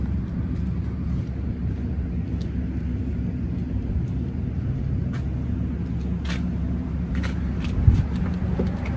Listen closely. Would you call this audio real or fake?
real